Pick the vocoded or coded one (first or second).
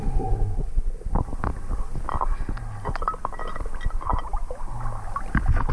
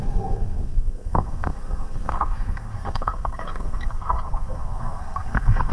second